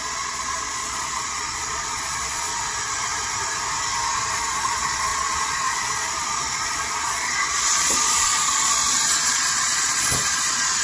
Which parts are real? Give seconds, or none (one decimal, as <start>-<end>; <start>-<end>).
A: 2.5-4.3